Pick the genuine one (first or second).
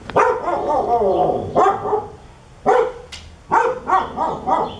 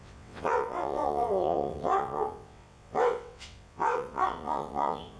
first